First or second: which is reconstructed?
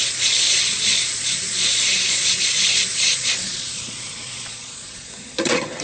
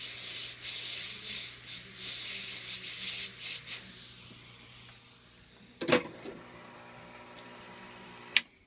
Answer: first